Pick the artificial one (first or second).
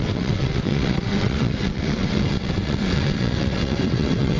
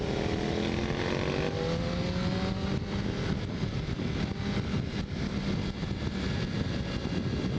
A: first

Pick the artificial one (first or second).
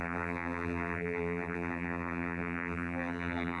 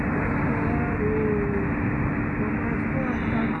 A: first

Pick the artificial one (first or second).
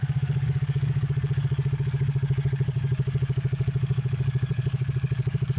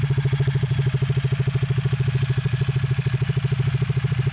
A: first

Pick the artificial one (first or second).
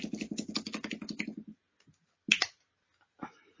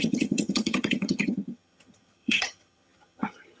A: second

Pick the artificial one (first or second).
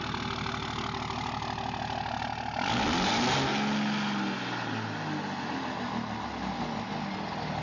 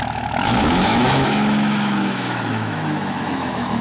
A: second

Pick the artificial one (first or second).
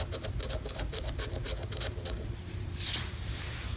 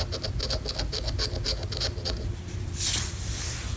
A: first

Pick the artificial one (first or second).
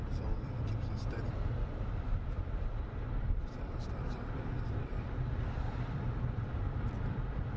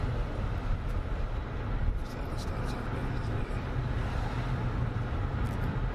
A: first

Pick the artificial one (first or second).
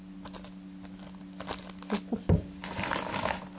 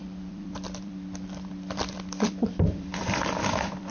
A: second